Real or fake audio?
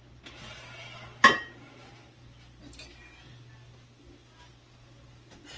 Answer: real